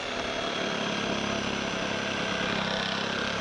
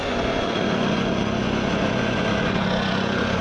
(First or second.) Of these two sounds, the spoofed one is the second